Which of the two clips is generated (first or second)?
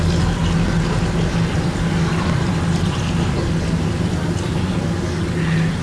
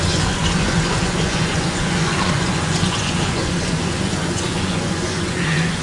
second